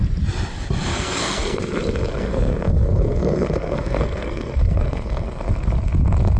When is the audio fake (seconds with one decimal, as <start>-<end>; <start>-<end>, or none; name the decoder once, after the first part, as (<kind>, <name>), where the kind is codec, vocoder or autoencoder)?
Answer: 0.9-1.6 (codec, SNAC); 2.1-5.4